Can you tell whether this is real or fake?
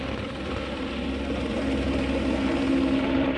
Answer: real